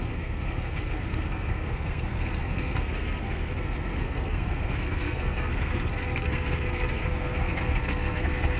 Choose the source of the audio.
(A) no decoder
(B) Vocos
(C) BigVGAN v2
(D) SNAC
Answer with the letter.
D